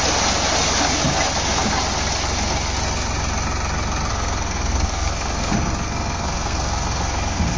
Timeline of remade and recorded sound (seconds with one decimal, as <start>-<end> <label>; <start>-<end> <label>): 0.0-4.1 recorded; 4.1-7.6 remade

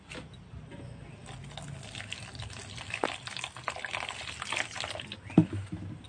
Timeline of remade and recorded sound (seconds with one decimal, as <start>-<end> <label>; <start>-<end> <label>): 0.0-6.1 recorded

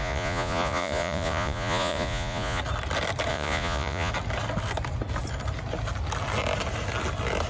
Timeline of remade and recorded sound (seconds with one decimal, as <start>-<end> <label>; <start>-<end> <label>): 0.0-2.6 remade; 2.6-3.3 recorded; 3.3-4.1 remade; 4.1-7.5 recorded

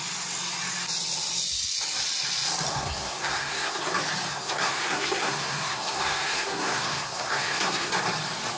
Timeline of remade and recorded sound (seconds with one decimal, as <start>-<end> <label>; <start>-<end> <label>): 0.0-2.7 recorded; 2.7-3.8 remade; 3.8-4.3 recorded; 4.3-7.9 remade; 7.9-8.6 recorded

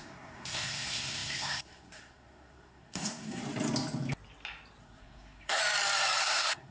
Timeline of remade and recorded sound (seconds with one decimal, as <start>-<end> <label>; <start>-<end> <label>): 0.0-3.4 remade; 3.4-4.8 recorded; 4.8-5.6 remade; 5.6-6.2 recorded; 6.2-6.7 remade

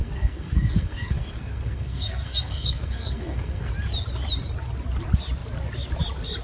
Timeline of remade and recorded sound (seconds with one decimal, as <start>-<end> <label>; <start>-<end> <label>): 0.0-3.7 remade; 3.7-6.4 recorded

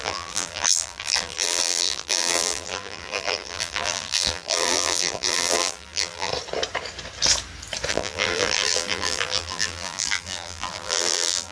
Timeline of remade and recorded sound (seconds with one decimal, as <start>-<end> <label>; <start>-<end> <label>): 0.0-6.3 remade; 6.3-7.9 recorded; 7.9-11.5 remade

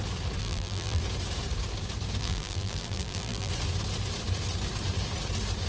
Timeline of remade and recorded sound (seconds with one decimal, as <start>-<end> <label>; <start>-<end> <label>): 0.0-0.4 recorded; 0.4-1.0 remade; 1.0-2.2 recorded; 2.2-3.5 remade; 3.5-5.7 recorded